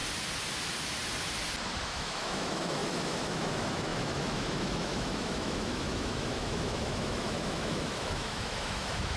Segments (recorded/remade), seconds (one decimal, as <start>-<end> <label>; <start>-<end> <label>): 0.0-1.8 recorded; 1.8-9.2 remade